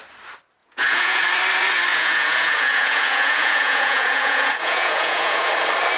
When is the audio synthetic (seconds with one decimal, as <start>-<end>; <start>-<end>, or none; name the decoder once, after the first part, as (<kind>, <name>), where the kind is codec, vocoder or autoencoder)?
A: 0.6-1.2 (vocoder, Vocos); 1.9-5.5